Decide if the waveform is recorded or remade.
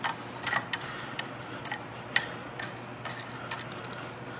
recorded